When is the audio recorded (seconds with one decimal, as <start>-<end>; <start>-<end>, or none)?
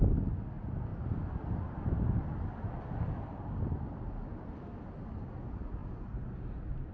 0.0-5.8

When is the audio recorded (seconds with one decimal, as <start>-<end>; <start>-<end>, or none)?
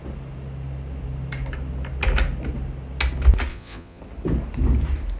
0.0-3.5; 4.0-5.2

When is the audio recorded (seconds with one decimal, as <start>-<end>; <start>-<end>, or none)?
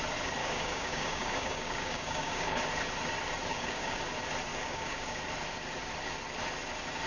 0.0-0.4; 2.6-3.5; 4.0-4.5; 5.2-7.1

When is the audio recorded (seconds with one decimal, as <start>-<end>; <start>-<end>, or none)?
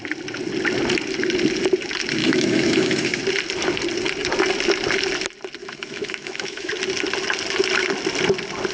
0.0-2.2; 3.2-5.6; 6.7-8.7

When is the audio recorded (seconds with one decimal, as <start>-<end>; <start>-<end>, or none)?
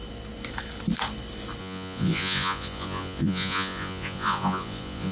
0.0-1.6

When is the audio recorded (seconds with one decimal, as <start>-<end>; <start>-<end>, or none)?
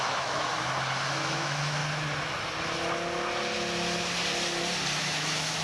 0.5-1.1; 1.8-5.0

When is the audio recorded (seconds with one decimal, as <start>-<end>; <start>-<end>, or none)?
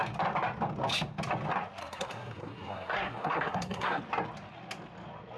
0.0-1.8; 4.0-5.4